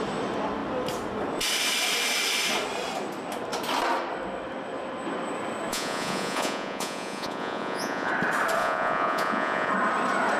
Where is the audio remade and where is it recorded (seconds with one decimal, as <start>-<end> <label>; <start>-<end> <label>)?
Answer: 0.0-5.7 recorded; 5.7-8.1 remade; 8.1-8.6 recorded; 8.6-9.7 remade; 9.7-10.4 recorded